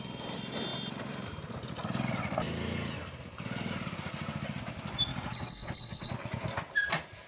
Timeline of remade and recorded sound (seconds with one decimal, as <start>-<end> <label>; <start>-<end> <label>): 0.0-5.1 recorded; 5.1-6.1 remade; 6.1-7.3 recorded